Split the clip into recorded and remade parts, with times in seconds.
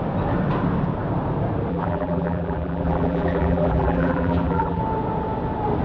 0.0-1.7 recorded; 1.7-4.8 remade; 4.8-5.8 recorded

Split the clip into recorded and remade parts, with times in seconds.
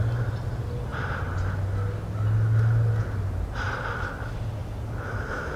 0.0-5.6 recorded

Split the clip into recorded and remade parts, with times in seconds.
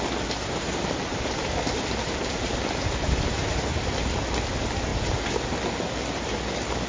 0.0-1.1 recorded; 1.1-3.9 remade; 3.9-4.9 recorded; 4.9-5.7 remade; 5.7-6.9 recorded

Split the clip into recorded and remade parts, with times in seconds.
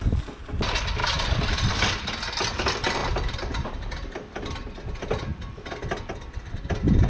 0.0-7.1 recorded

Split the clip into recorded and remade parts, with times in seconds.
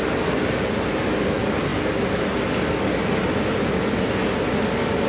0.0-5.1 recorded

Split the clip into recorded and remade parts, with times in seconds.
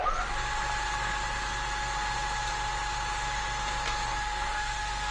0.0-4.1 recorded; 4.1-5.1 remade